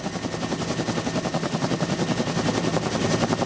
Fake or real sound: real